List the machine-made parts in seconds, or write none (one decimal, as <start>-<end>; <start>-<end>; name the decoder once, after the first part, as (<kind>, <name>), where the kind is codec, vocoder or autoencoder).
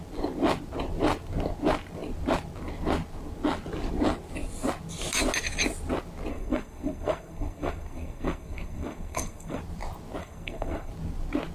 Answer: 6.3-9.6 (codec, SNAC); 10.2-10.9